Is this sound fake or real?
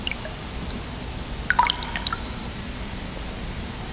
real